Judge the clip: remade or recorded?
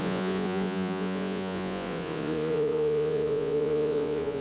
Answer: remade